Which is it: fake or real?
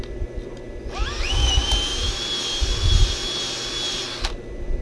real